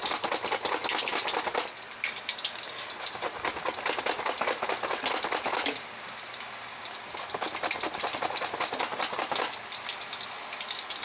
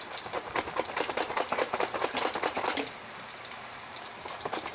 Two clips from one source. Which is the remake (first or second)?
second